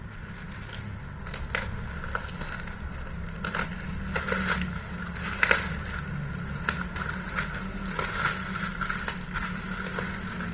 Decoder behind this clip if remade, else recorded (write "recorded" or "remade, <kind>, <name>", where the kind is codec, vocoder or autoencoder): recorded